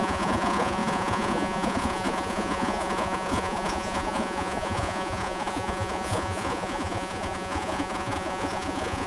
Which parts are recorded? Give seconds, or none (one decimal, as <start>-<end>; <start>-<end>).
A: none